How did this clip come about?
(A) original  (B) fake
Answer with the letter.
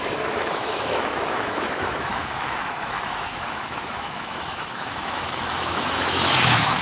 B